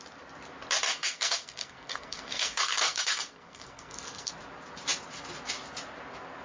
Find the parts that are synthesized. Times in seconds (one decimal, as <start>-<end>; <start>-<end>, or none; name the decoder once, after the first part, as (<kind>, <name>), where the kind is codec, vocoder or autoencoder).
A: 0.9-4.3 (codec, SNAC)